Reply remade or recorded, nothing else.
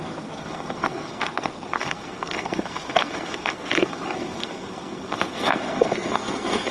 remade